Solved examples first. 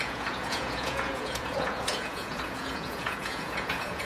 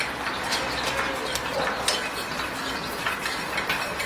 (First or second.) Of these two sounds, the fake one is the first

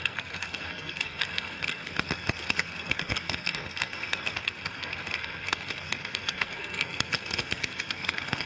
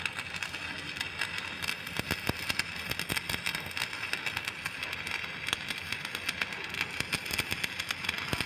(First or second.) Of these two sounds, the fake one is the first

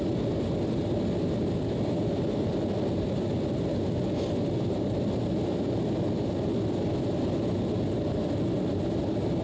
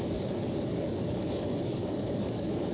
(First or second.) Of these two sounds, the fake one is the second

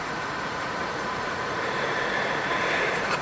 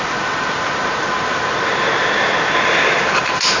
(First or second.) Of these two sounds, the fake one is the first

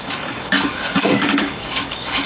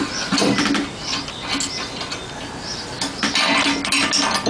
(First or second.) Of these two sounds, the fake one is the first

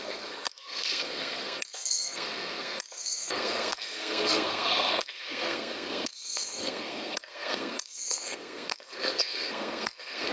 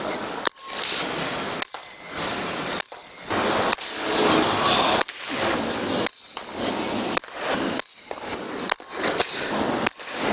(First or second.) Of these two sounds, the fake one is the first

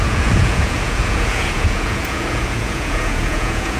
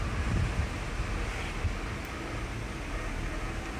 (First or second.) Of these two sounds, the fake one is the first